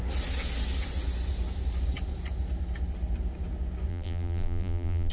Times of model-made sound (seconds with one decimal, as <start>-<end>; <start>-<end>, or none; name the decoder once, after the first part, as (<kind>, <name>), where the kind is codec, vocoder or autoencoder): 3.9-5.1 (vocoder, BigVGAN v2)